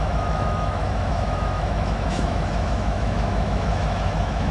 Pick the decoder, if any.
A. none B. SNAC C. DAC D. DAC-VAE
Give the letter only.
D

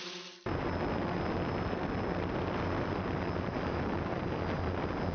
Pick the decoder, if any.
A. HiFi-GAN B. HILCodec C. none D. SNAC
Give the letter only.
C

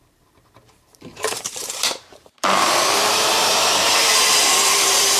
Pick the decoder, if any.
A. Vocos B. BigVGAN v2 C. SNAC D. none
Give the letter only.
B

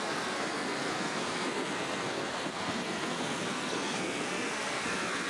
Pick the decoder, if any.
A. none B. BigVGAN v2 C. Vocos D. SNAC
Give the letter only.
D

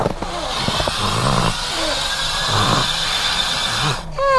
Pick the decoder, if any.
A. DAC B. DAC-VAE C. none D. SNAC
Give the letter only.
C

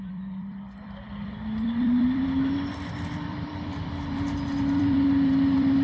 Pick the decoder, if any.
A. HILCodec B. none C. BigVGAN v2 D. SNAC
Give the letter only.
C